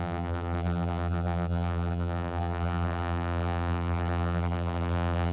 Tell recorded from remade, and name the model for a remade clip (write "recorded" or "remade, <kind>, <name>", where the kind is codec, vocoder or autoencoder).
remade, vocoder, BigVGAN v2